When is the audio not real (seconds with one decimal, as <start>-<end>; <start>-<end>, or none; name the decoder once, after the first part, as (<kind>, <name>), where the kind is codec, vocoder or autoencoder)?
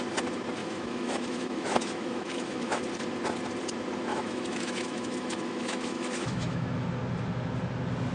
0.6-2.8 (autoencoder, DAC-VAE); 4.1-6.9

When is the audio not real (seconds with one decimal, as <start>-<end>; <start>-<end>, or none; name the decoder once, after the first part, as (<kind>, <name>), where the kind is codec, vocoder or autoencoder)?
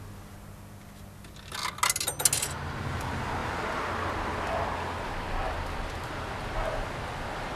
none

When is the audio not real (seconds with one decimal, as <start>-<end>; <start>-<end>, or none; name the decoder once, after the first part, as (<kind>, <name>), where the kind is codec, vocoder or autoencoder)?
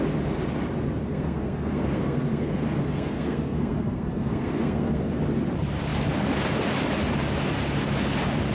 1.1-5.2 (codec, SNAC)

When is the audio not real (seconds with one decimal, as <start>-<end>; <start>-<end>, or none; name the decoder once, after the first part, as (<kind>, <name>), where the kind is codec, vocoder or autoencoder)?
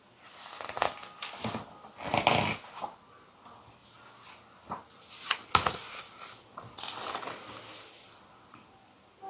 none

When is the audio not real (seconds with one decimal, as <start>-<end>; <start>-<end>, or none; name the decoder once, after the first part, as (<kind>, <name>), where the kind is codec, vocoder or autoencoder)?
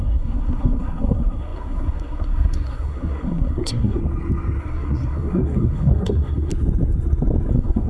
0.0-4.0 (codec, SNAC); 4.6-6.5; 7.5-7.9